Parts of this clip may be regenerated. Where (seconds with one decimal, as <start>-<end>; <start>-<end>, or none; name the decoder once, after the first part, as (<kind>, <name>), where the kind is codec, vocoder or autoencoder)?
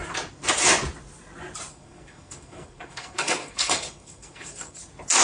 1.7-4.8 (codec, SNAC)